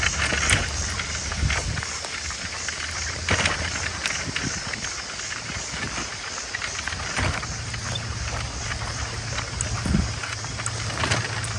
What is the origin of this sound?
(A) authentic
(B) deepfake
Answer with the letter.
A